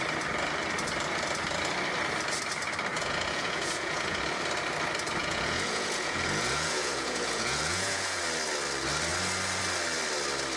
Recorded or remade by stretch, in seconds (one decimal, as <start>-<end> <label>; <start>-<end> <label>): 0.0-2.9 recorded; 2.9-4.2 remade; 4.2-5.2 recorded; 5.2-8.2 remade; 8.2-10.6 recorded